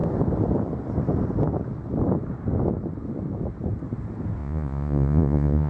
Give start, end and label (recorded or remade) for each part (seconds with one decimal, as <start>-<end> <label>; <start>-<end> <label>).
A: 0.0-4.4 recorded; 4.4-5.7 remade